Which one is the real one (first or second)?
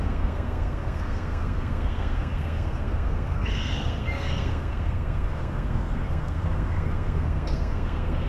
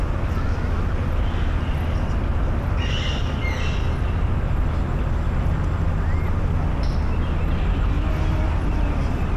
second